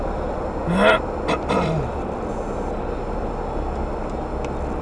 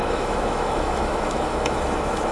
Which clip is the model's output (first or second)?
second